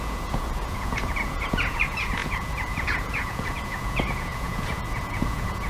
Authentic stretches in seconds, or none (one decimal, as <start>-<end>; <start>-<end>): none